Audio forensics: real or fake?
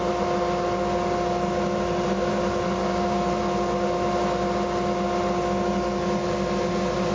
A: real